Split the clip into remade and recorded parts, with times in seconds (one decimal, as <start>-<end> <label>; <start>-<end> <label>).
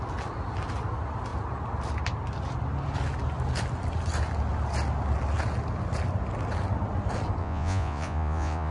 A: 0.0-7.4 recorded; 7.4-8.7 remade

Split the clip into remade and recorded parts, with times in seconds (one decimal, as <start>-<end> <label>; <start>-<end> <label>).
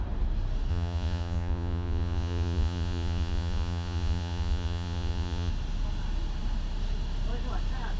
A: 0.0-0.7 recorded; 0.7-5.5 remade; 5.5-8.0 recorded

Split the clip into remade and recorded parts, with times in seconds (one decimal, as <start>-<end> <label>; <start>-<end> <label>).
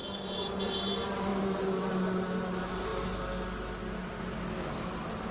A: 0.0-0.8 remade; 0.8-5.3 recorded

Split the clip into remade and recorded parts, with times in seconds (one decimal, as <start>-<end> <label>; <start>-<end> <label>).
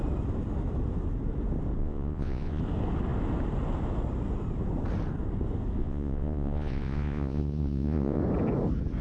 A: 0.0-1.8 recorded; 1.8-2.6 remade; 2.6-5.8 recorded; 5.8-8.2 remade; 8.2-9.0 recorded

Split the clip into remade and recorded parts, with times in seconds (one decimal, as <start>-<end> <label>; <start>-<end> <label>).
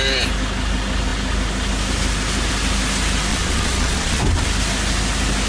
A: 0.0-3.3 recorded; 3.3-4.2 remade; 4.2-5.5 recorded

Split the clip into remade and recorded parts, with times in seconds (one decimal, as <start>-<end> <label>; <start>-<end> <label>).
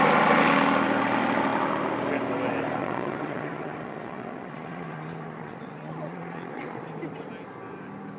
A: 0.0-2.8 recorded; 2.8-6.9 remade; 6.9-8.2 recorded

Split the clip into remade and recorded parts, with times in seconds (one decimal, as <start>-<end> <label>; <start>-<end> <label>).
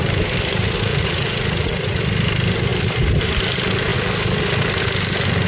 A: 0.0-0.9 recorded; 0.9-2.0 remade; 2.0-5.5 recorded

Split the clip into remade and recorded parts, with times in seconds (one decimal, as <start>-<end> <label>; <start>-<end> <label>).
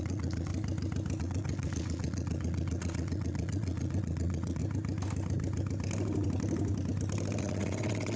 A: 0.0-0.5 remade; 0.5-1.2 recorded; 1.2-4.6 remade; 4.6-7.4 recorded; 7.4-8.2 remade